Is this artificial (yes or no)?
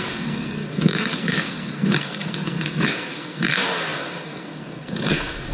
yes